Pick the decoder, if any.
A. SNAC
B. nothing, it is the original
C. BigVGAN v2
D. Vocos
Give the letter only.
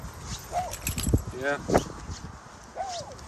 B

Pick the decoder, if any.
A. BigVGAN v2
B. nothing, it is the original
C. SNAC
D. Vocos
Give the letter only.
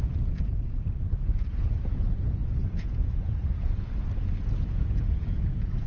D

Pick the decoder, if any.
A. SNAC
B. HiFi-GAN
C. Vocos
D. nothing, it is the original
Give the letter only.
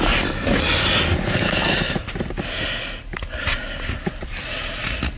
D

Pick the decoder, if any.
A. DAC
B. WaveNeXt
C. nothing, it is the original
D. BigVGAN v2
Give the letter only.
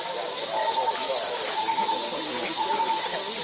C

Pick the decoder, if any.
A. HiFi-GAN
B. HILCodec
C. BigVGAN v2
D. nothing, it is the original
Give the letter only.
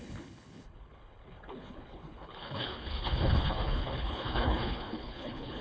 B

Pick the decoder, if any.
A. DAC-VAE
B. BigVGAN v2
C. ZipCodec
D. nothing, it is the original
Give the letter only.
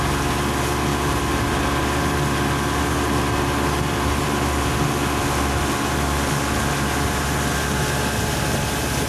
D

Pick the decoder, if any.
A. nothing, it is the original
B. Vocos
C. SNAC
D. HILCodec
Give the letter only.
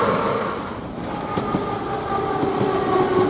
A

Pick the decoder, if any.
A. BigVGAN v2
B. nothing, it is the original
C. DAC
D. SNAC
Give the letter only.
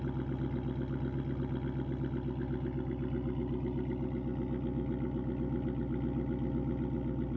B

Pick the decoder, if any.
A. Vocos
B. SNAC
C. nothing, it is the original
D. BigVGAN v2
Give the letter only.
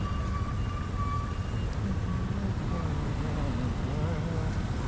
C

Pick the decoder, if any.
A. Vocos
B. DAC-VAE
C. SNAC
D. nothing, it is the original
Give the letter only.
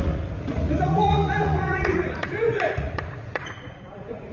A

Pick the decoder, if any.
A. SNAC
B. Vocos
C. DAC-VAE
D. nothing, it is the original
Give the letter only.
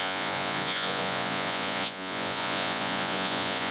B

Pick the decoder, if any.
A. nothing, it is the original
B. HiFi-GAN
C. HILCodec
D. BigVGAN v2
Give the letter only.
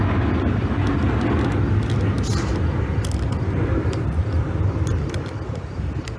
A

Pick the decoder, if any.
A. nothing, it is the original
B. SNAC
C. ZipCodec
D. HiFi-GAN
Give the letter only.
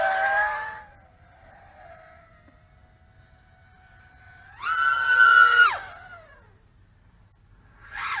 A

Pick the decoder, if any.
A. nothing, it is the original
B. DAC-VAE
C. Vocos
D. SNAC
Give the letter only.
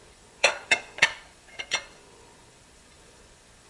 C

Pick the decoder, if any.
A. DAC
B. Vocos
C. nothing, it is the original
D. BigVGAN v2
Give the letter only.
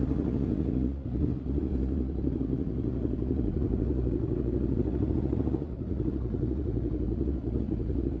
B